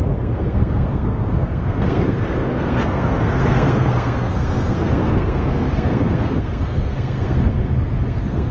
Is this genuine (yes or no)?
no